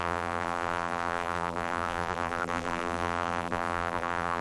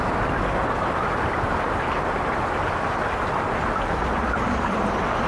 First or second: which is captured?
second